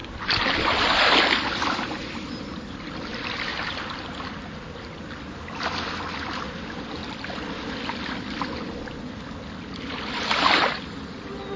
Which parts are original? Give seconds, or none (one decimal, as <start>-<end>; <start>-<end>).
0.0-11.6